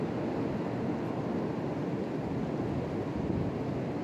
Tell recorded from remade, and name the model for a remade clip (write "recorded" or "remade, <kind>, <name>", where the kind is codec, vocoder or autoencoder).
recorded